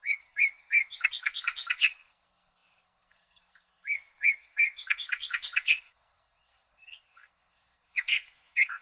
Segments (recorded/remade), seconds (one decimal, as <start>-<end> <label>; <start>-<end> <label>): 0.0-8.8 remade